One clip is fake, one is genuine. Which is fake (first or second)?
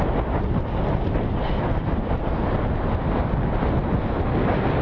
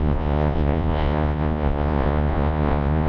second